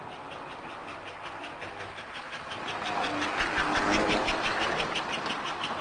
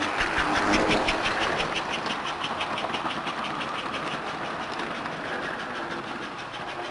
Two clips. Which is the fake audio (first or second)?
second